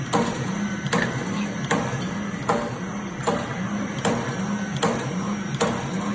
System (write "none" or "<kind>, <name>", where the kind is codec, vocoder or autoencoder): none